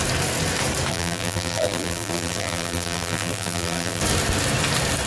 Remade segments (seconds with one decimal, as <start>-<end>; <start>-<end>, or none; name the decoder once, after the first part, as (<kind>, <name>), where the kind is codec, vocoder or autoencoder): 0.9-4.0 (vocoder, BigVGAN v2)